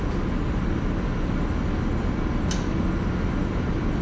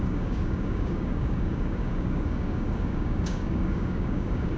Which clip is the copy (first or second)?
second